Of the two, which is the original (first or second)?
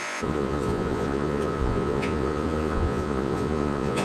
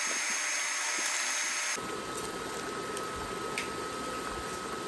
second